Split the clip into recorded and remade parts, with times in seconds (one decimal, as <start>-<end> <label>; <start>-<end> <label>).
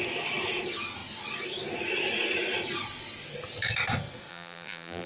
0.0-4.3 recorded; 4.3-5.1 remade